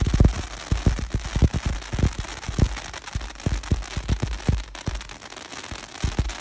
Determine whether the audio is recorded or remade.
recorded